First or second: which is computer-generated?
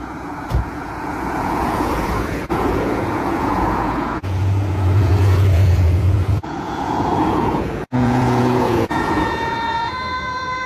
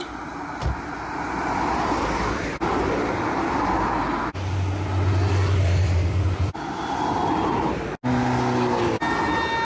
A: first